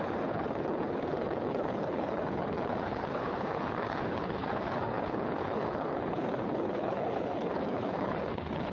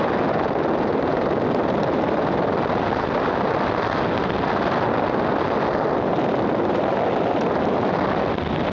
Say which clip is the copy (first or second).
first